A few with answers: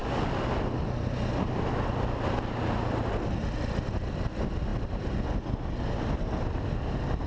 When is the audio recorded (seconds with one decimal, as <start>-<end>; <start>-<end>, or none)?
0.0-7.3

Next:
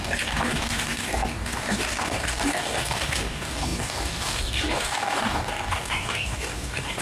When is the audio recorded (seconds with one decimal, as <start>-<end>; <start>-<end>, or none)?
none

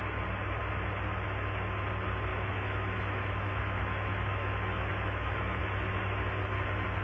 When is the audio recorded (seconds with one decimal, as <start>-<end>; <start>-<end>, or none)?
0.0-2.3; 5.6-7.0